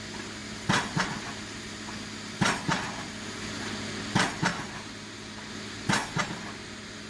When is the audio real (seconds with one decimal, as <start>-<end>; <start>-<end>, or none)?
0.0-7.1